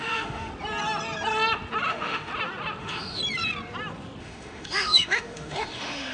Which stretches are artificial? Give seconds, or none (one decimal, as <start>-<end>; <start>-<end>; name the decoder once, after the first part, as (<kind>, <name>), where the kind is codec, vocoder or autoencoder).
0.0-0.5 (autoencoder, DAC-VAE); 1.9-2.3; 2.8-3.2; 4.2-6.1